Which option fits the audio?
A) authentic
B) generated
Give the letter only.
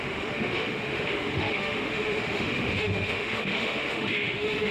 B